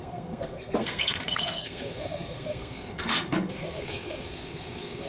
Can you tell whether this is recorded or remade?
remade